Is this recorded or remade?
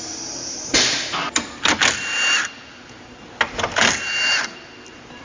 recorded